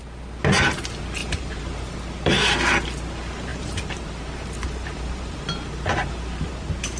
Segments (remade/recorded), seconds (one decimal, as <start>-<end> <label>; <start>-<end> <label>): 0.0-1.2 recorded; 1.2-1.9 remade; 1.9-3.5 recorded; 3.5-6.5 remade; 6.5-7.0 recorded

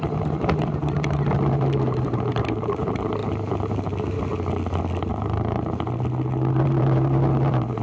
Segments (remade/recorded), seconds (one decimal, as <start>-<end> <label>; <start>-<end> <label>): 0.0-3.2 remade; 3.2-6.5 recorded; 6.5-7.8 remade

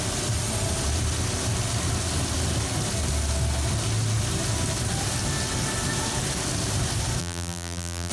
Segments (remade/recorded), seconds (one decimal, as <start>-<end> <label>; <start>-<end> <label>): 0.0-7.2 recorded; 7.2-8.1 remade

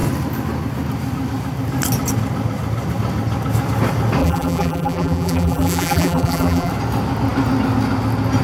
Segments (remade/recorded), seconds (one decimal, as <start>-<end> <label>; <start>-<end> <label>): 0.0-4.2 recorded; 4.2-6.7 remade; 6.7-8.4 recorded

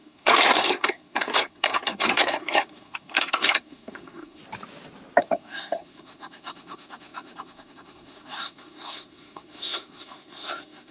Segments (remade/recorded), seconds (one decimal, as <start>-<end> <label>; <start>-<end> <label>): 0.0-4.4 remade; 4.4-5.2 recorded; 5.2-10.9 remade